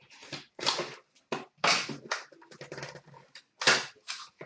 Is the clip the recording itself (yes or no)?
yes